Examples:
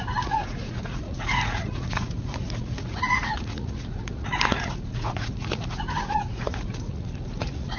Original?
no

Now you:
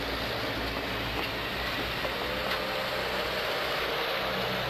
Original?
yes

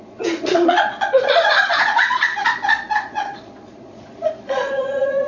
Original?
no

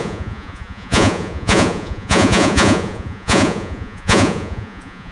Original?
no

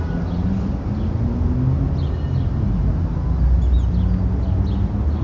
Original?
yes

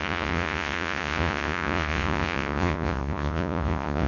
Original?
no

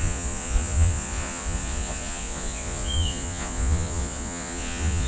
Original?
no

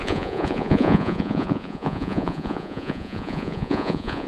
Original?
no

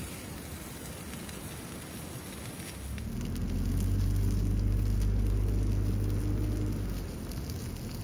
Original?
yes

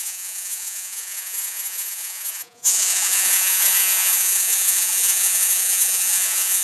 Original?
no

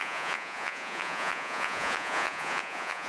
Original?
no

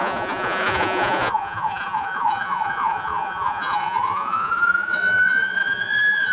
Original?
no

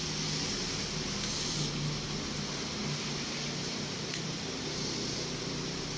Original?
yes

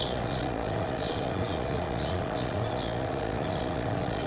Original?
no